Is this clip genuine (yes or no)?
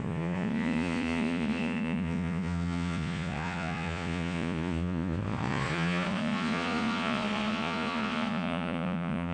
no